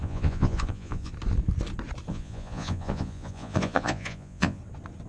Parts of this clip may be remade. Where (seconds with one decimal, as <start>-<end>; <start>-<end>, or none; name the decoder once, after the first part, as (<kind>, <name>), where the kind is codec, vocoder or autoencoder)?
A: 0.0-1.1 (vocoder, Vocos); 2.1-4.6